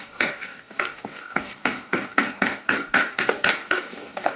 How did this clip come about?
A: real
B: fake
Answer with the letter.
B